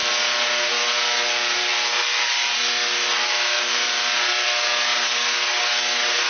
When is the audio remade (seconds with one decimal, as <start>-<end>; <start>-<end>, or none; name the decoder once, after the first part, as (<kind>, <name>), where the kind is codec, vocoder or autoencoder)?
none